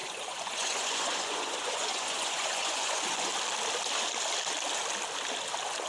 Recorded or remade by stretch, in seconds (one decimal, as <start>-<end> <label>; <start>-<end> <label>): 0.0-3.3 remade; 3.3-5.9 recorded